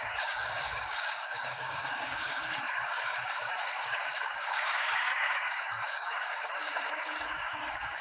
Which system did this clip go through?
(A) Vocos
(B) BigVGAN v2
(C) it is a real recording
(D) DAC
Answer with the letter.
D